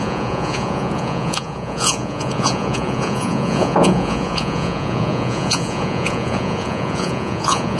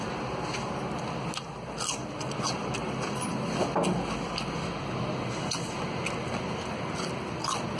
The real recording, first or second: second